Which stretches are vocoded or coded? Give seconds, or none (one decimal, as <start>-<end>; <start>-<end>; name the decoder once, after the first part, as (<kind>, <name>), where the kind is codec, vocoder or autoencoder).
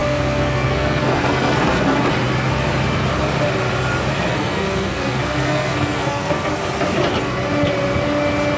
0.0-2.0 (codec, SNAC); 4.3-6.5